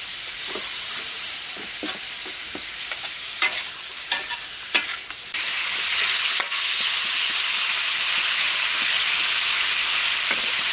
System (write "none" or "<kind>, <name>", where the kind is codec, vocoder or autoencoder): none